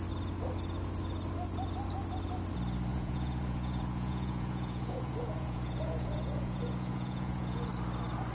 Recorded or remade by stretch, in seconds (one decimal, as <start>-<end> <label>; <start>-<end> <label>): 0.0-2.9 recorded; 2.9-7.7 remade; 7.7-8.3 recorded